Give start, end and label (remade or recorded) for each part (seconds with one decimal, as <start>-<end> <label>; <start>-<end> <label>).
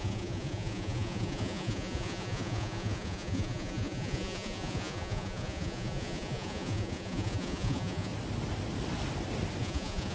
0.0-8.1 remade; 8.1-9.6 recorded; 9.6-10.1 remade